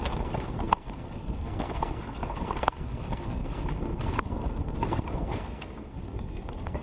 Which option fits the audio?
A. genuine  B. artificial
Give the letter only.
B